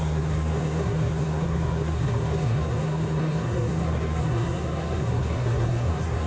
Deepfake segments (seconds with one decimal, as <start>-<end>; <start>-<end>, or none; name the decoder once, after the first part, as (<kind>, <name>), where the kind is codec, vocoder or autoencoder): 0.0-6.3 (codec, SNAC)